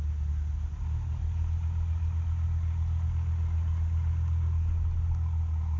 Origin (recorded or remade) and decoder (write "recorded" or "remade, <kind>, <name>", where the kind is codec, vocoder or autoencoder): recorded